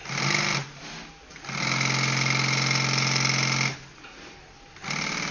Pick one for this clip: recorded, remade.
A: recorded